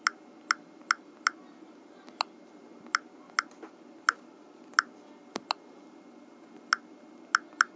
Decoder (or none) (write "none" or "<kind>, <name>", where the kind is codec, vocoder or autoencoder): none